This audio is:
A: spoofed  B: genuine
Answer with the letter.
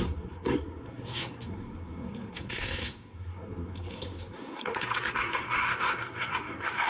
A